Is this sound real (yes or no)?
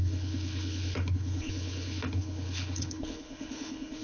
no